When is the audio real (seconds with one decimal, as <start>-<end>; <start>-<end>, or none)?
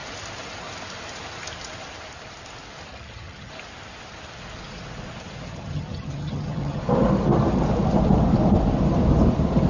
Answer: 0.0-2.9; 3.5-5.5; 6.8-9.7